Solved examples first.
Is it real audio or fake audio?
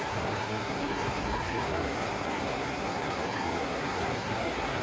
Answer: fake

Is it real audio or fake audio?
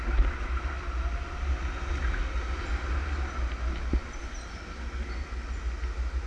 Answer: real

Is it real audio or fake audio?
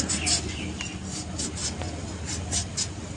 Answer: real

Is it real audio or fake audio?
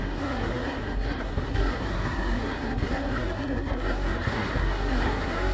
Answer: fake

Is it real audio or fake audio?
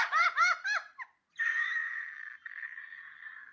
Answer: real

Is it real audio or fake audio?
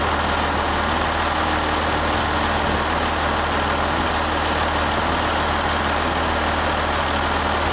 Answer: real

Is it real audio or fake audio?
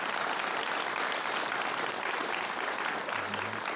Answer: real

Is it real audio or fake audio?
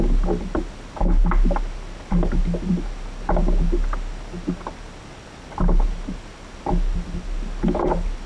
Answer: real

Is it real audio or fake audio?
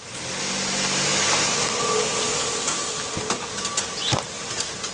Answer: real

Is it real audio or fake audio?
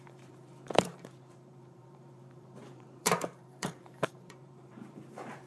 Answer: fake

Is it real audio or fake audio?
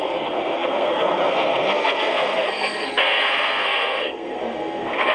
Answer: fake